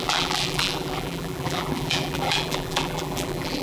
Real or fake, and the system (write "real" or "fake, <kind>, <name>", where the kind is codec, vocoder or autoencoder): fake, vocoder, BigVGAN v2